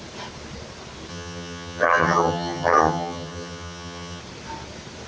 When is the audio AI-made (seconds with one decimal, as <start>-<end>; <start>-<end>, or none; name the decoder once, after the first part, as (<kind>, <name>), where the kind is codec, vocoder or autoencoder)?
1.1-4.2 (vocoder, HiFi-GAN)

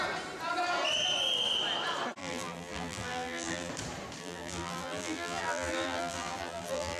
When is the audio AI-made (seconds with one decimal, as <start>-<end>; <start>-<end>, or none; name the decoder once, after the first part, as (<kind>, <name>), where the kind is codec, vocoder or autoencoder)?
2.2-3.7 (vocoder, BigVGAN v2); 4.2-7.0

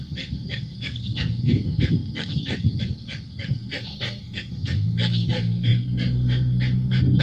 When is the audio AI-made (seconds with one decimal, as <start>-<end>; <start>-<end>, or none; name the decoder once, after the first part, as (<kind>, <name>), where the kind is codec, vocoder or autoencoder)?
0.0-7.2 (codec, SNAC)

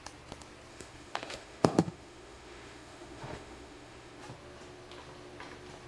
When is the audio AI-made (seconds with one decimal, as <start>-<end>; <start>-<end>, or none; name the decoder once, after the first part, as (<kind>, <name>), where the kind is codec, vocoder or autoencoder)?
0.7-4.2 (autoencoder, DAC-VAE)

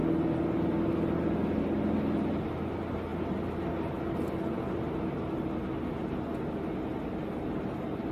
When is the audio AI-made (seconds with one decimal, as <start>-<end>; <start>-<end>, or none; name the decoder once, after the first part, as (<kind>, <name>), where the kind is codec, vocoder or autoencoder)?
none

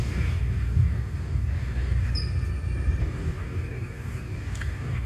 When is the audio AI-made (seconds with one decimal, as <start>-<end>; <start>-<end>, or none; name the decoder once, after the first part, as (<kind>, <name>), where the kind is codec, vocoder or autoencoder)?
0.0-2.1 (codec, DAC); 3.0-5.1

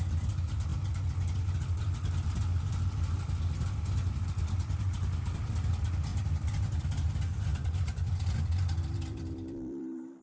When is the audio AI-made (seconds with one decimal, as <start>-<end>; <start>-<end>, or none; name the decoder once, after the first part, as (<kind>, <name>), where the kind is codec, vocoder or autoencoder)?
0.0-0.7 (vocoder, BigVGAN v2); 1.7-10.2